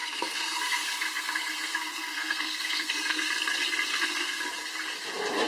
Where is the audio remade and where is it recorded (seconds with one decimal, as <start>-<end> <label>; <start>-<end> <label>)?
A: 0.0-3.3 remade; 3.3-3.9 recorded; 3.9-4.4 remade; 4.4-5.5 recorded